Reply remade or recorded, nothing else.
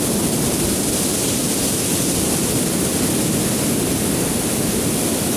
recorded